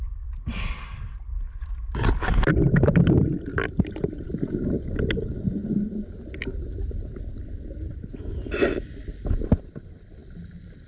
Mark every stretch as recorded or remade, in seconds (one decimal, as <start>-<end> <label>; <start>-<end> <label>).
0.0-10.9 recorded